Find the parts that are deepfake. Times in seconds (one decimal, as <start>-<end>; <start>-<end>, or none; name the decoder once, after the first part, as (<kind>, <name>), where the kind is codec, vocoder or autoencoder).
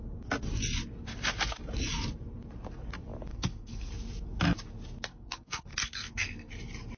3.3-3.9 (codec, SNAC); 5.1-6.5